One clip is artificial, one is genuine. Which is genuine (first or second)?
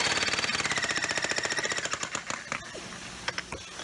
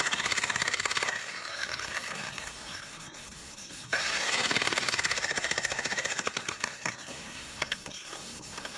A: first